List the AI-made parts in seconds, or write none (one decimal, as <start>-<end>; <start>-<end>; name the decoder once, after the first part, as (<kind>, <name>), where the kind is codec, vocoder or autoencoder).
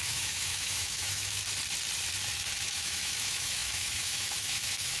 0.0-1.4 (autoencoder, DAC-VAE); 2.6-5.0